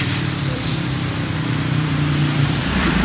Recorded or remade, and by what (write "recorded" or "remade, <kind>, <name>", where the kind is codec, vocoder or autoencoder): remade, vocoder, BigVGAN v2